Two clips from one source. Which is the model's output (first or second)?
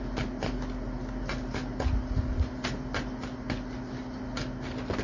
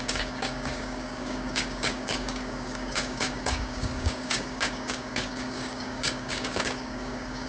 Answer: second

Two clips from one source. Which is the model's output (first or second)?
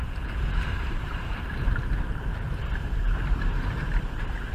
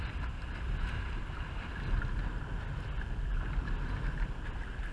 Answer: first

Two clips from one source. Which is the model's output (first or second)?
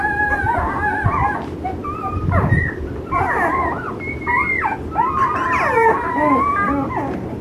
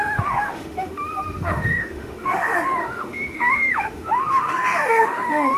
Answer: second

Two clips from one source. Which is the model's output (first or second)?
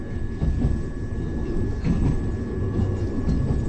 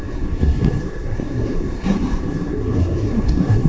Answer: second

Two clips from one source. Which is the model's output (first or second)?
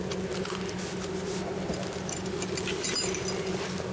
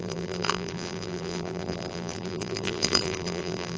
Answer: second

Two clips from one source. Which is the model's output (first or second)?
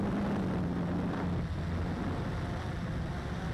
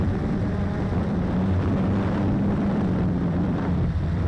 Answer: second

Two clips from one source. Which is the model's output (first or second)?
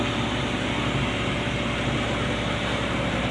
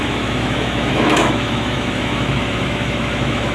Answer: second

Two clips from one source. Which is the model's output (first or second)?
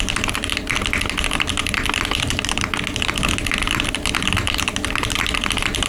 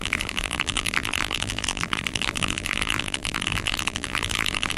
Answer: second